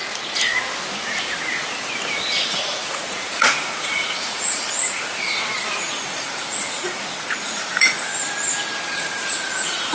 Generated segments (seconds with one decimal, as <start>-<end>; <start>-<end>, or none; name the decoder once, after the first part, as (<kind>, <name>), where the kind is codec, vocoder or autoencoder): 2.5-8.1 (vocoder, Vocos); 8.7-9.9